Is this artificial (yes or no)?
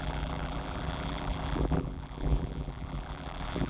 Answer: yes